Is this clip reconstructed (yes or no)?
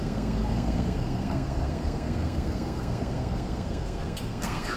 yes